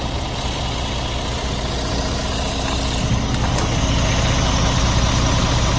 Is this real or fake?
real